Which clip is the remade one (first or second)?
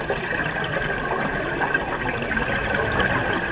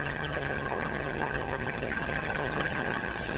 second